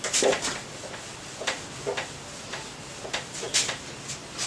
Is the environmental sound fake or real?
real